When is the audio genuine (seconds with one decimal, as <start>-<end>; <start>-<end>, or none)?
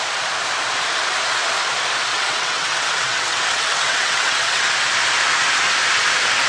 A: 0.0-2.1; 4.6-6.5